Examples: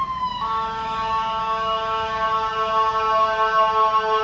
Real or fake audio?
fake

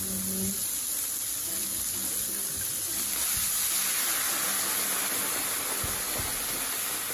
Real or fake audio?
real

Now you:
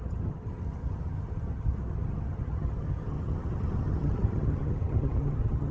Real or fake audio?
fake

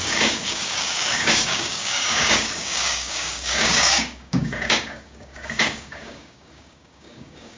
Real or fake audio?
fake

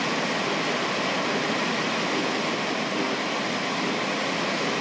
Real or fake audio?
real